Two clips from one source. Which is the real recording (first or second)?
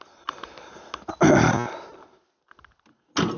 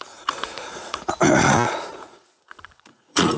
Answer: first